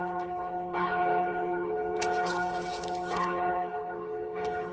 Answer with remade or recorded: remade